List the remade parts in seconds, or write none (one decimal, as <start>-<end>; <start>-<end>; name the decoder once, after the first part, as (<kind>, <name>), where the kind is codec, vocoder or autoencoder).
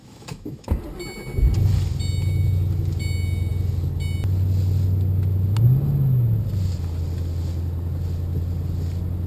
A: 0.0-0.8 (autoencoder, DAC-VAE)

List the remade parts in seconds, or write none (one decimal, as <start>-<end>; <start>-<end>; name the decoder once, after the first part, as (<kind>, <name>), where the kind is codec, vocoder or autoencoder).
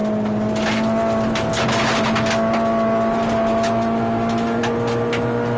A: 3.5-4.6 (autoencoder, DAC-VAE)